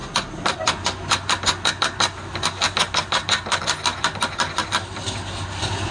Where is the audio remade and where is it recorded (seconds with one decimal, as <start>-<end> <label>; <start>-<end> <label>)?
0.0-5.9 recorded